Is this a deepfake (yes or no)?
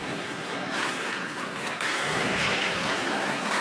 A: yes